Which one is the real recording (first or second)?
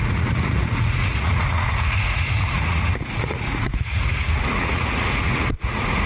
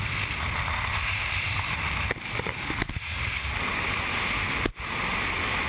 second